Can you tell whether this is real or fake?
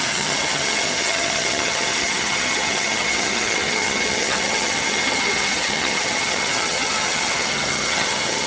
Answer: fake